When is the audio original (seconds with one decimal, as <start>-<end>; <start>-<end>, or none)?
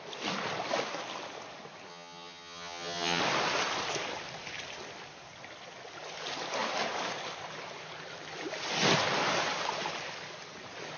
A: 0.0-1.9; 3.2-11.0